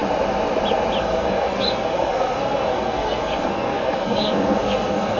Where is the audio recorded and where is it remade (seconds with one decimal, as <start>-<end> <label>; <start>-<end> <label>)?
0.0-1.0 recorded; 1.0-5.2 remade